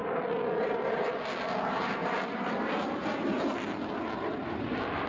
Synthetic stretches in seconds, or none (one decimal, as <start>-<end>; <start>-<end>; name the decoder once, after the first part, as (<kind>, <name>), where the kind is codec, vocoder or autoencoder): 0.0-1.0 (vocoder, BigVGAN v2); 2.0-5.1